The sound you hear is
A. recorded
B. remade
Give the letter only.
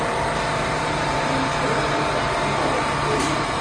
A